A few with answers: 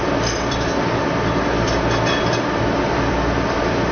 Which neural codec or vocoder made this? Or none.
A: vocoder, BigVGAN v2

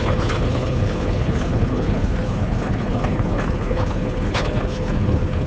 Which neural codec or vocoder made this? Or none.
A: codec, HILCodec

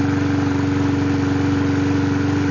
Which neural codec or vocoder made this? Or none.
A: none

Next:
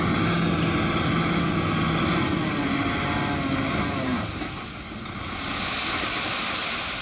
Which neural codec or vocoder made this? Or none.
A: none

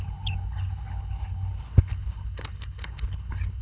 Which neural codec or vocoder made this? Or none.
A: codec, HILCodec